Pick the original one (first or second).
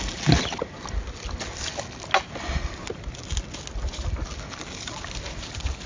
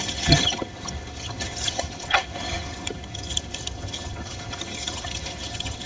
first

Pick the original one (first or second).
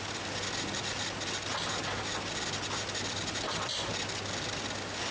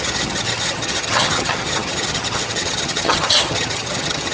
first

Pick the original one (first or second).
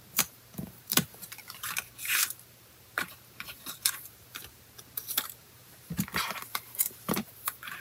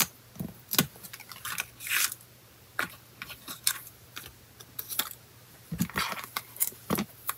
second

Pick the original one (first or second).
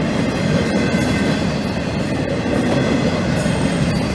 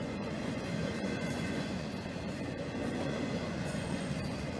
first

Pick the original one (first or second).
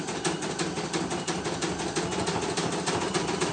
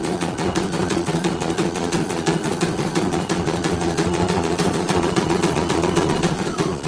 first